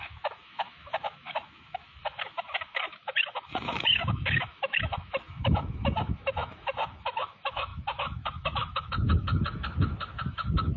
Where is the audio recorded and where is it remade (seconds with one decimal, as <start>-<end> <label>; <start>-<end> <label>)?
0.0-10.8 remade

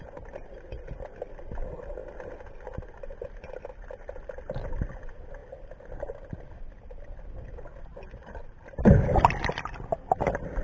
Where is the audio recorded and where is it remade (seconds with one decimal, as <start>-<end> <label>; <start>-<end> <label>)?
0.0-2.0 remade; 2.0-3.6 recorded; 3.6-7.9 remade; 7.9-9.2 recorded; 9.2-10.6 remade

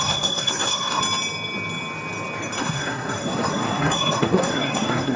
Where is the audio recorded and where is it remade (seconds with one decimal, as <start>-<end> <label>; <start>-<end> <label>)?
0.0-1.0 remade; 1.0-2.6 recorded; 2.6-5.2 remade

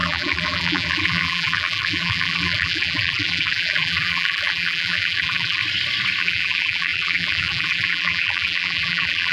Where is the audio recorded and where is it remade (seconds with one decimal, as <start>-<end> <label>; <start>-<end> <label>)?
0.0-5.6 remade; 5.6-6.2 recorded; 6.2-9.3 remade